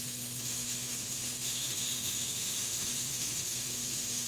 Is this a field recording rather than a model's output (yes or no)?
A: no